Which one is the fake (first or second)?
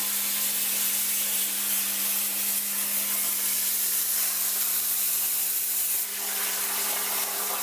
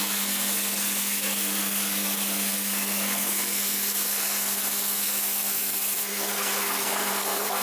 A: second